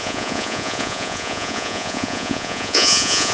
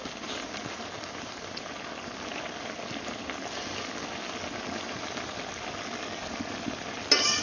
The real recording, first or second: second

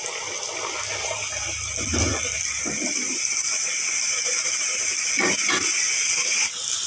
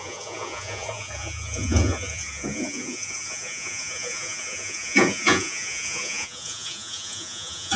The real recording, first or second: first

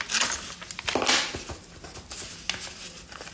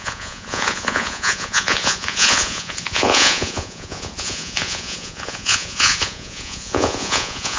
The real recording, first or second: first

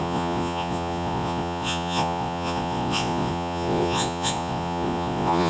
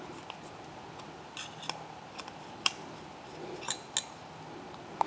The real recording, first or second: second